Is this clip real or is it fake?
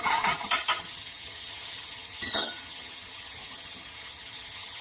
fake